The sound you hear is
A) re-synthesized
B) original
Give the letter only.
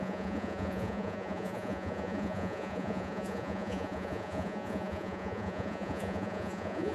A